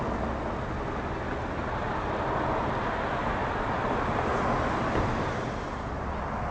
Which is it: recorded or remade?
recorded